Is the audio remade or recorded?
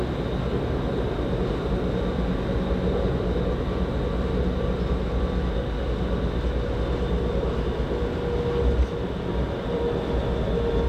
recorded